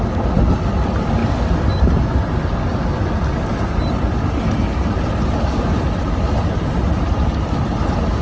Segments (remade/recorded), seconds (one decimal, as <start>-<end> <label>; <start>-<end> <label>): 0.0-8.2 recorded